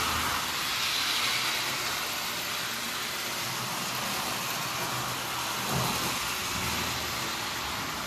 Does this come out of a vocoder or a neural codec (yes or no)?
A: no